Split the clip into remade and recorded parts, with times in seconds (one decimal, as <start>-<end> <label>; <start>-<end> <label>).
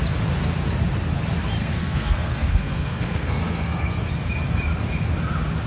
0.0-1.6 recorded; 1.6-4.1 remade; 4.1-5.7 recorded